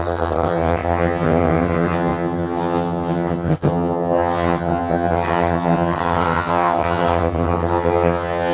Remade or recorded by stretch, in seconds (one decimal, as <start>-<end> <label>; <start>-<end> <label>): 0.0-8.5 remade